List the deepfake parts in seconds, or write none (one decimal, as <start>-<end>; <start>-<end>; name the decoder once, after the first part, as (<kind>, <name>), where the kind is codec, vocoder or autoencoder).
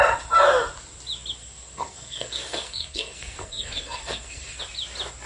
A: 1.4-4.6 (codec, SNAC)